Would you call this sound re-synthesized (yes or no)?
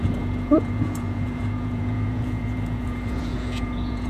yes